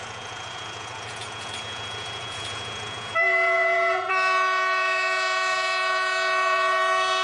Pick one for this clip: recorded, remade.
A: remade